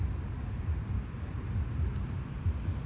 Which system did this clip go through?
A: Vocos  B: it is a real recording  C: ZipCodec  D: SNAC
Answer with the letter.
B